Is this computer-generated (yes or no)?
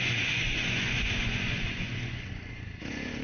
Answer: yes